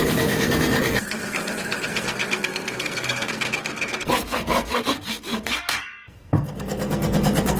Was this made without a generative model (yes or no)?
no